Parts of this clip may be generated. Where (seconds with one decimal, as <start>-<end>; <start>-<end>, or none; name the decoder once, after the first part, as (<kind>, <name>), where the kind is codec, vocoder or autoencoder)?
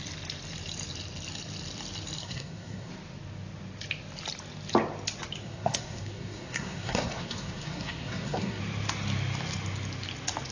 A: 2.2-2.9 (codec, SNAC); 5.4-8.6